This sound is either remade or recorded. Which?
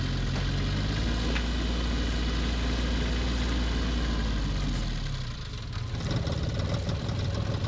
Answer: recorded